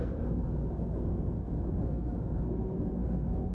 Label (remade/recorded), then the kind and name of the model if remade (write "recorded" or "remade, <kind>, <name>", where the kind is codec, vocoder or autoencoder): remade, codec, SNAC